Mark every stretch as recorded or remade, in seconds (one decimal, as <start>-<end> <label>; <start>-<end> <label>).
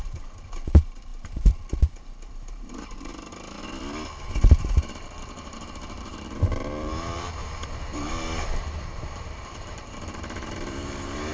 0.0-3.1 remade; 3.1-4.2 recorded; 4.2-11.3 remade